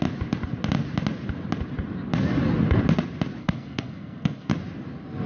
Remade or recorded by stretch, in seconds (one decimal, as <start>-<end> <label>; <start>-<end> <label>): 0.0-3.4 recorded; 3.4-4.5 remade; 4.5-5.3 recorded